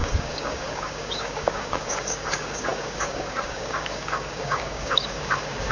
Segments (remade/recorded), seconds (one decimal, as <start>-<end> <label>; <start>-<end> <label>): 0.0-5.7 remade